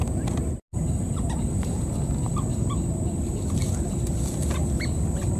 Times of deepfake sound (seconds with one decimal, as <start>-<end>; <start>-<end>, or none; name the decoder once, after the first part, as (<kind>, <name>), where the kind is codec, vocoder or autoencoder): none